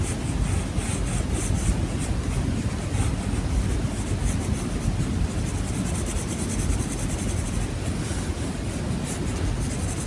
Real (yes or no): yes